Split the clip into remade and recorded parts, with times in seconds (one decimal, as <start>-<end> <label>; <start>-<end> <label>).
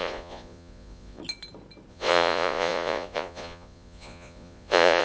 0.0-1.2 remade; 1.2-1.9 recorded; 1.9-5.0 remade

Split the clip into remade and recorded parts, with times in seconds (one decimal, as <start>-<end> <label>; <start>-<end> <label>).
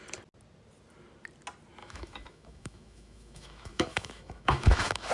0.0-1.8 recorded; 1.8-5.1 remade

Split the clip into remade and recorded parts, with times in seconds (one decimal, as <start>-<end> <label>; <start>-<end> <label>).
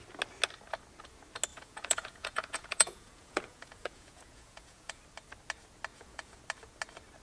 0.0-1.5 recorded; 1.5-5.0 remade; 5.0-5.9 recorded; 5.9-6.4 remade; 6.4-7.2 recorded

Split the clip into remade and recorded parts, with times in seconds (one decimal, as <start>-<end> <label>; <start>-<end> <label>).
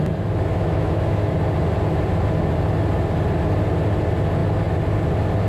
0.0-0.5 recorded; 0.5-1.3 remade; 1.3-5.5 recorded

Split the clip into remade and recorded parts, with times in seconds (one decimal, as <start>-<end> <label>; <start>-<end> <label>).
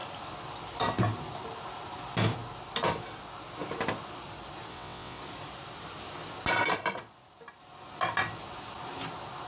0.0-4.7 recorded; 4.7-5.2 remade; 5.2-9.5 recorded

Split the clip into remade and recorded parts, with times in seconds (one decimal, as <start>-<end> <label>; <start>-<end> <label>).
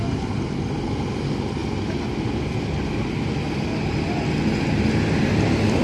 0.0-5.8 recorded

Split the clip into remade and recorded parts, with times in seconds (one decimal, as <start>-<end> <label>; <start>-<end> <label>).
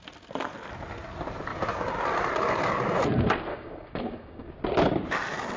0.0-1.5 recorded; 1.5-2.0 remade; 2.0-3.5 recorded; 3.5-4.5 remade; 4.5-5.6 recorded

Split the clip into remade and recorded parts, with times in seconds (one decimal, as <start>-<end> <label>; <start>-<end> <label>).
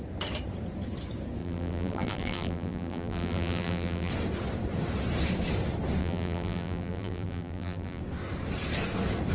0.0-1.4 recorded; 1.4-4.1 remade; 4.1-6.0 recorded; 6.0-8.0 remade; 8.0-9.3 recorded